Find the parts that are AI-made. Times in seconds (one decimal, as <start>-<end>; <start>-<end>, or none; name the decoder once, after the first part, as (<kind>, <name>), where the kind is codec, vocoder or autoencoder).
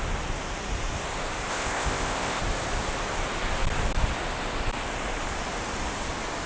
1.5-2.4 (codec, ZipCodec)